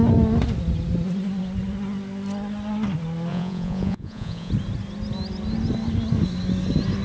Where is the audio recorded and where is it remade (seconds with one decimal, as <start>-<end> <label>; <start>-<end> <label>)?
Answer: 0.0-3.3 recorded; 3.3-4.5 remade; 4.5-7.0 recorded